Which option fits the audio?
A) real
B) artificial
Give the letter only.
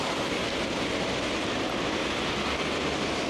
A